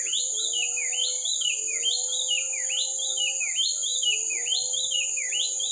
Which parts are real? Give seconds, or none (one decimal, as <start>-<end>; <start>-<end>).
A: 0.0-1.0; 3.4-3.9; 5.3-5.7